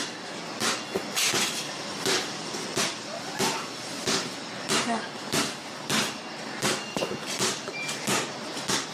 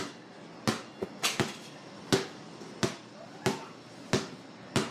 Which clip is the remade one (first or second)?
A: first